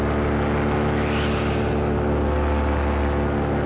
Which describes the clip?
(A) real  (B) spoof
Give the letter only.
A